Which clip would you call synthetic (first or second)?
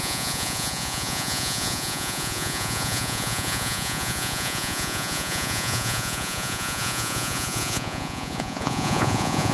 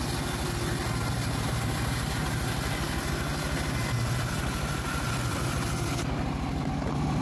first